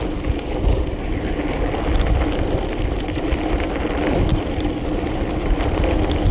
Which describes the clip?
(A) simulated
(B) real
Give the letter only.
B